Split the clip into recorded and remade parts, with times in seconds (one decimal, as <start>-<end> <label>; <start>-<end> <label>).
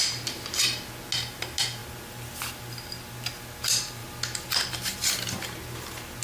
0.0-6.2 recorded